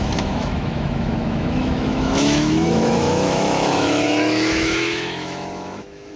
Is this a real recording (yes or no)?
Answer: no